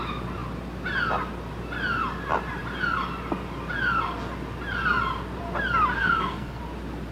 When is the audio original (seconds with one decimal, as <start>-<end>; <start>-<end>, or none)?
0.0-6.0; 6.6-7.1